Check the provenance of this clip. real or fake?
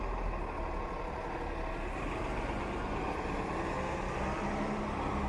real